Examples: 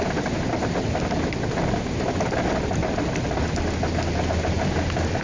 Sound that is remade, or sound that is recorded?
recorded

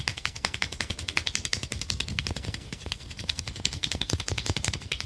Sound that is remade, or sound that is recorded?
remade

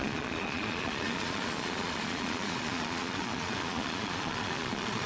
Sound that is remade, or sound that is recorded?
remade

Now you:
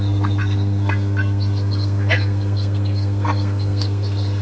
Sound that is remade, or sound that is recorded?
remade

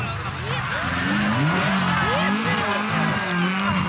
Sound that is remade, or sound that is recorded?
recorded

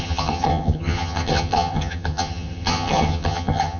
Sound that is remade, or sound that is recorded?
remade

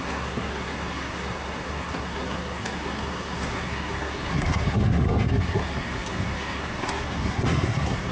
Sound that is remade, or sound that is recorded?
remade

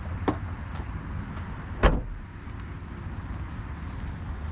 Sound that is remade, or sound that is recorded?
recorded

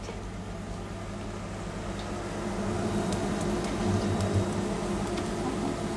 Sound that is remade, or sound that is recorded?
recorded